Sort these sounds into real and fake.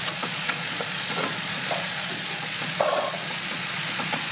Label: fake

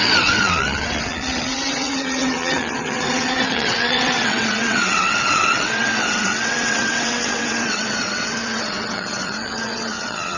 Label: fake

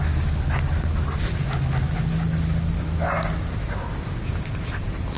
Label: real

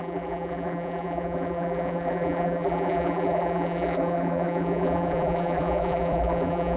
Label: fake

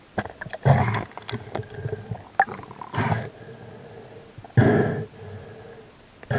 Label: real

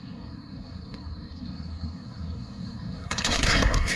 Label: fake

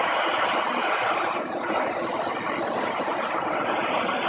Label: real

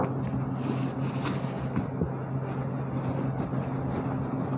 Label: real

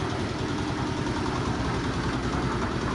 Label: real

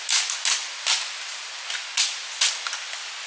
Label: real